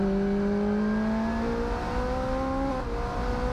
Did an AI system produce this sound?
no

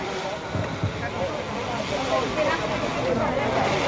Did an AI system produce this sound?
no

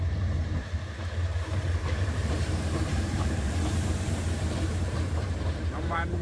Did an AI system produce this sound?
yes